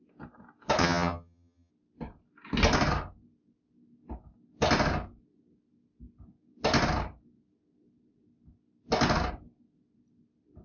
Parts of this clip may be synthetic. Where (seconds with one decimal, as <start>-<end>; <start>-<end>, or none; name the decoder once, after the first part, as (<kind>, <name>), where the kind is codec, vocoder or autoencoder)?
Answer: 0.8-1.7 (vocoder, HiFi-GAN)